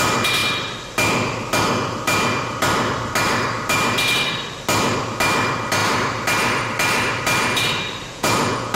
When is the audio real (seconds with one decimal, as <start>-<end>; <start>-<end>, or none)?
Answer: 0.0-8.1